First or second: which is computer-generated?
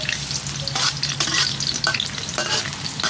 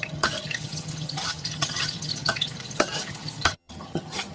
second